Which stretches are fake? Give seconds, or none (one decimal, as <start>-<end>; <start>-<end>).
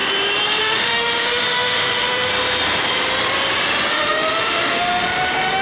0.6-2.3; 3.9-5.6